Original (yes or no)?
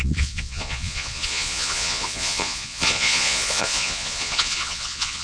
no